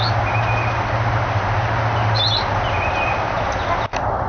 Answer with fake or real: real